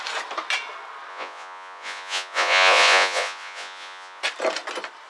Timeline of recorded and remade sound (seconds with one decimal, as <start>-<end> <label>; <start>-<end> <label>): 0.0-1.1 recorded; 1.1-4.2 remade; 4.2-5.1 recorded